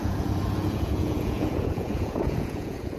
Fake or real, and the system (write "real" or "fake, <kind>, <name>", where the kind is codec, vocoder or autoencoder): fake, vocoder, Vocos